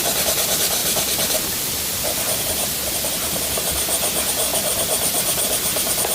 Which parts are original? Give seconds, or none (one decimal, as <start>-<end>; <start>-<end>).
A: 0.0-6.1